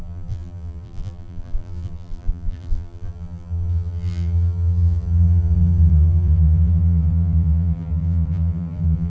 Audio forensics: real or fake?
fake